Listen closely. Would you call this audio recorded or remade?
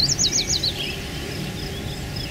recorded